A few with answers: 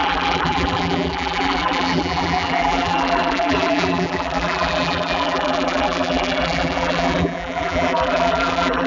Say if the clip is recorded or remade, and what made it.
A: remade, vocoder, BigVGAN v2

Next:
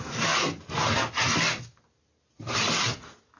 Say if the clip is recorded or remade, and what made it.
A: recorded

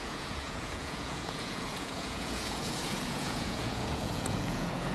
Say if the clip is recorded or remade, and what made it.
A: remade, vocoder, Vocos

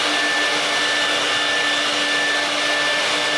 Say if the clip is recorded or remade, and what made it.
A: recorded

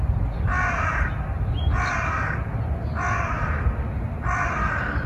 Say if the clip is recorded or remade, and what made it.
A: recorded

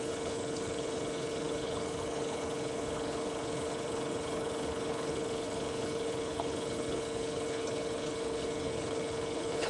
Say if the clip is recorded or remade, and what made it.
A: remade, codec, HILCodec